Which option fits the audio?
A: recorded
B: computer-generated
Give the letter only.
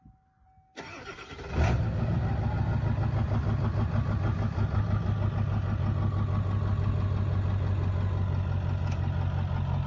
A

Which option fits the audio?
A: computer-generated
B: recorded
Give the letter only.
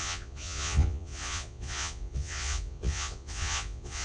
A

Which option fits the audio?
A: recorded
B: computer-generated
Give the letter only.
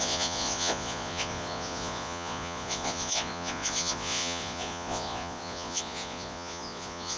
B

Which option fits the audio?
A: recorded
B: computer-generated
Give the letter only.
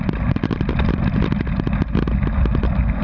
A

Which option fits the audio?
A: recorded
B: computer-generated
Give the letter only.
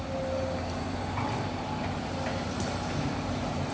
A